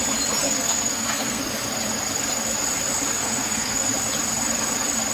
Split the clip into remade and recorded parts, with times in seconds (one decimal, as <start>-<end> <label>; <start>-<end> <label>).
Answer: 0.0-0.4 recorded; 0.4-1.4 remade; 1.4-3.1 recorded; 3.1-3.9 remade; 3.9-5.1 recorded